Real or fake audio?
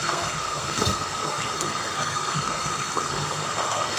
fake